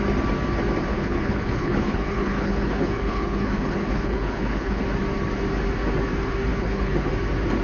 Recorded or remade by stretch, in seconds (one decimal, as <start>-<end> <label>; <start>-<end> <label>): 0.0-0.9 recorded; 0.9-4.8 remade; 4.8-6.5 recorded; 6.5-7.1 remade; 7.1-7.6 recorded